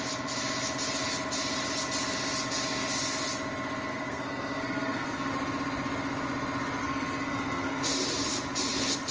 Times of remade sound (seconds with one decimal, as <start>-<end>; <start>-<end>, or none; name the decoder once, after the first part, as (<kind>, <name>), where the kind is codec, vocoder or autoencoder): 3.9-5.3 (codec, SNAC); 6.8-7.8